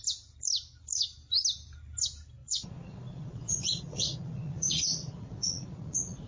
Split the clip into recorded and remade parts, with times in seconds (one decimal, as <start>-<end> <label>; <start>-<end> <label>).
0.0-2.4 recorded; 2.4-6.3 remade